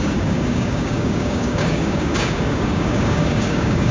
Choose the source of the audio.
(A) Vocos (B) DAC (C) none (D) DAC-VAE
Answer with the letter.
B